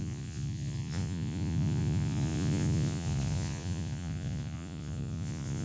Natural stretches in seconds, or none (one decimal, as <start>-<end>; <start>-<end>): none